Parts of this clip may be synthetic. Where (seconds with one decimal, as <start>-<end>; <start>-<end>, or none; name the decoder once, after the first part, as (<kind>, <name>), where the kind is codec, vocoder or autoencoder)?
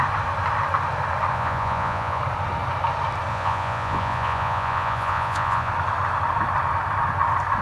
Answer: 1.3-2.2 (vocoder, Vocos); 3.3-5.7